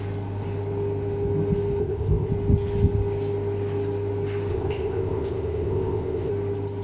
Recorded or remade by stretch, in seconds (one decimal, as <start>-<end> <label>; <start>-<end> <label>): 0.0-1.8 recorded; 1.8-2.3 remade; 2.3-4.5 recorded; 4.5-6.3 remade; 6.3-6.8 recorded

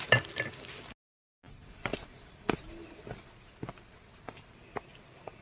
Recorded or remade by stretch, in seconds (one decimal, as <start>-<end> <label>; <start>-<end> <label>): 0.0-5.4 recorded

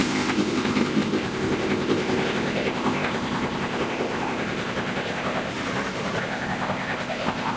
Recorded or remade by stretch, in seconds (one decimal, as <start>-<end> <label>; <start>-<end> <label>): 0.0-5.5 remade; 5.5-6.2 recorded; 6.2-7.6 remade

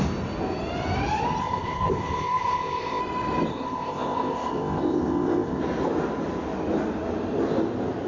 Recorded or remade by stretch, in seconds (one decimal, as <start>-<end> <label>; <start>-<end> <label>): 0.0-1.4 recorded; 1.4-3.0 remade; 3.0-3.5 recorded; 3.5-5.6 remade; 5.6-8.1 recorded

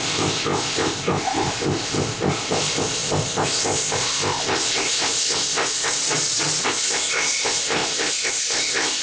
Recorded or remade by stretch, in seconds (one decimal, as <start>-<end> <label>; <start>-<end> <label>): 0.0-6.0 remade; 6.0-6.6 recorded; 6.6-9.0 remade

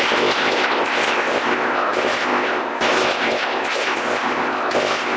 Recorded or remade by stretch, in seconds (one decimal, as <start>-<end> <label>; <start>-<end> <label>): 0.0-5.2 remade

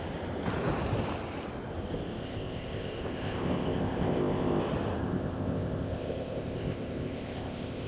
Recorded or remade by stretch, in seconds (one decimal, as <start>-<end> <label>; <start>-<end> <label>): 0.0-2.2 recorded; 2.2-4.6 remade; 4.6-5.0 recorded; 5.0-7.9 remade